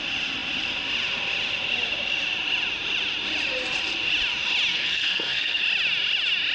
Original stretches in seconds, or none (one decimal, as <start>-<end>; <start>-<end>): 0.0-4.7; 5.6-6.5